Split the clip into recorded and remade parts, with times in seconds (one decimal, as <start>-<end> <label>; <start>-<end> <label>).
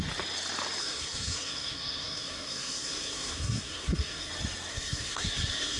0.0-0.8 recorded; 0.8-4.3 remade; 4.3-4.7 recorded; 4.7-5.8 remade